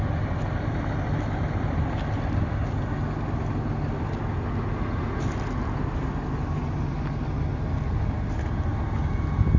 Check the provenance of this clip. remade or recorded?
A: recorded